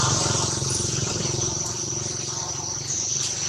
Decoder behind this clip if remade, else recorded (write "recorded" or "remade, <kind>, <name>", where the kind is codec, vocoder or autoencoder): remade, vocoder, BigVGAN v2